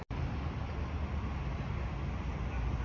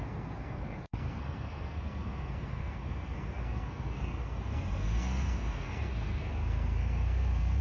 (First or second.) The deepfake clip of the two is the second